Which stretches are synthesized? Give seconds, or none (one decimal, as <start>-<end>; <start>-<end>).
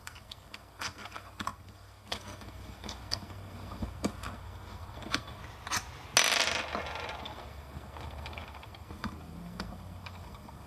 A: 0.0-5.4; 7.2-10.7